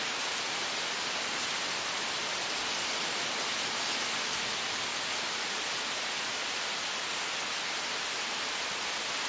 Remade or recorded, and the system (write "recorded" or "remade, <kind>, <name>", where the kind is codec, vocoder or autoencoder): recorded